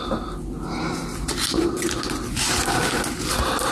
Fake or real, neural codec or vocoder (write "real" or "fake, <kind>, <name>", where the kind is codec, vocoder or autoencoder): real